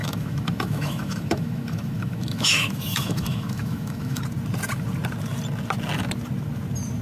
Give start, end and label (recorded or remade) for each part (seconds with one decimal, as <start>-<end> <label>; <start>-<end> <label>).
0.0-4.2 remade; 4.2-7.0 recorded